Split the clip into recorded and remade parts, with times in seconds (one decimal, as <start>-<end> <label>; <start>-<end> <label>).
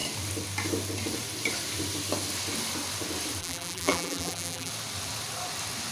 0.0-3.4 recorded; 3.4-4.7 remade; 4.7-5.9 recorded